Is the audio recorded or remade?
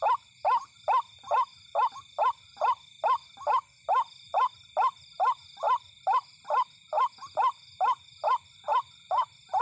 recorded